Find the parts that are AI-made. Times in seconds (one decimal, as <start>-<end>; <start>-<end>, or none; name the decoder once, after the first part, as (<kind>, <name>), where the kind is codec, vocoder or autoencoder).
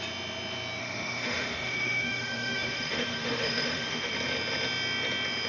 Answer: 0.8-4.1 (autoencoder, DAC-VAE)